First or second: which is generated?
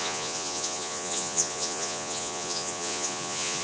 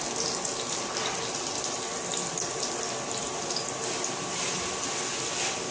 first